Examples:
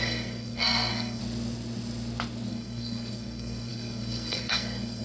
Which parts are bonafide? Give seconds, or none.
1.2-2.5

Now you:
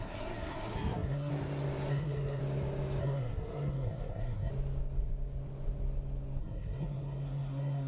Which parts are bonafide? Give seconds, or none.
1.3-1.9; 2.4-3.0; 4.5-6.4